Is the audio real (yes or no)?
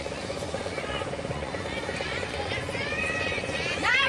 no